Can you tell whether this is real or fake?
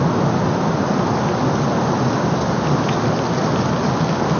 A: real